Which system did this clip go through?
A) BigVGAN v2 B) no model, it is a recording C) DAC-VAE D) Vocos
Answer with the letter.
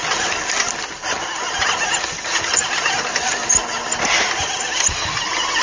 B